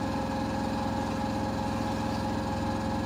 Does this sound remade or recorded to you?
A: recorded